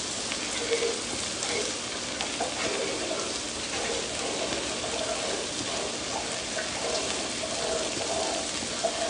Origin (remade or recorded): recorded